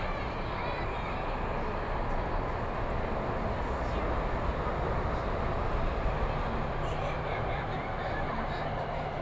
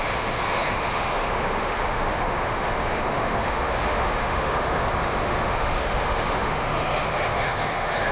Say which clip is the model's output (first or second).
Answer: second